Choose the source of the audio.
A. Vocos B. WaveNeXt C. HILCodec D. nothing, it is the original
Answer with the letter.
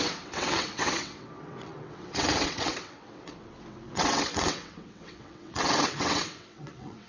B